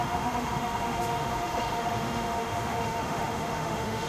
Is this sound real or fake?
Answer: fake